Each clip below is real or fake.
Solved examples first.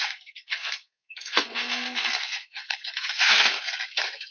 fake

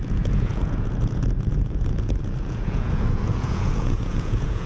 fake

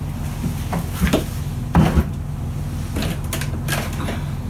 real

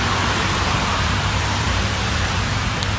fake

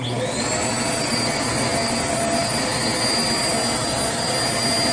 real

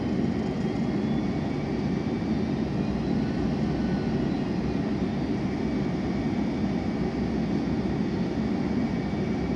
real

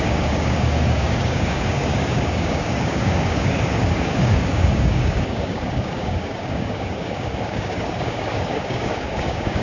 fake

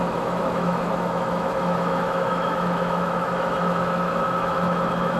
fake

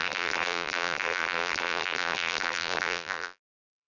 fake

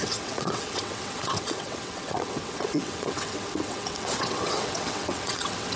fake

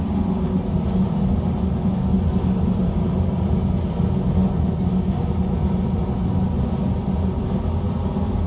real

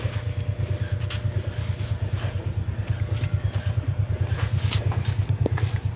real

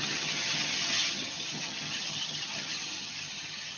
fake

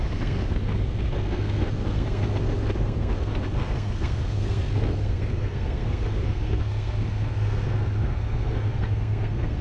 fake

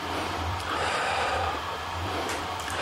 fake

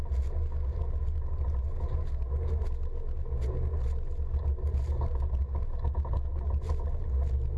real